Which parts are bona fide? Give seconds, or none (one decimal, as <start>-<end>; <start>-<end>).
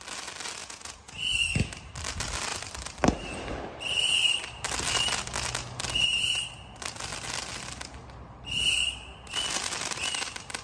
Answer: 0.0-0.6; 1.2-10.6